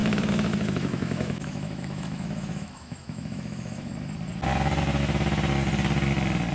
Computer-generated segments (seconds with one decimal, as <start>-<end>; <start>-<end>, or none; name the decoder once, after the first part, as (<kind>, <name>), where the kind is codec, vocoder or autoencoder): 0.0-3.9 (autoencoder, DAC-VAE)